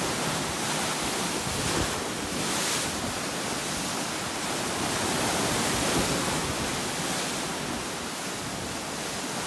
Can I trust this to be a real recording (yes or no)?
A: yes